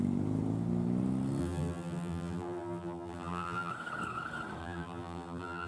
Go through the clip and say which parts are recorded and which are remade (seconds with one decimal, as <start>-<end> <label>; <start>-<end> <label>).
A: 0.0-1.4 recorded; 1.4-3.7 remade; 3.7-4.6 recorded; 4.6-5.7 remade